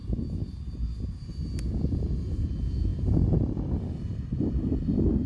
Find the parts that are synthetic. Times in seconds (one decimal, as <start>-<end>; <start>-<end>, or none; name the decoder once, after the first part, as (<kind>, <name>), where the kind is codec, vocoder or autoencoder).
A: none